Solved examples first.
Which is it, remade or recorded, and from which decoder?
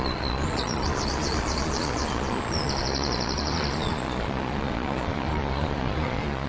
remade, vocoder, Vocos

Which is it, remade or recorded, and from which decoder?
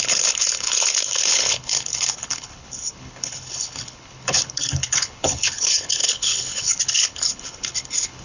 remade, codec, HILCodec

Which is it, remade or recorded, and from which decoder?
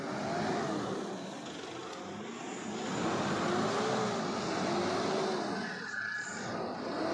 recorded